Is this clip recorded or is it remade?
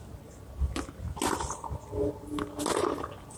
recorded